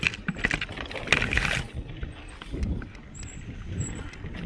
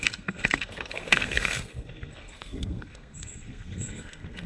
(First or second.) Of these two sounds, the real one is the first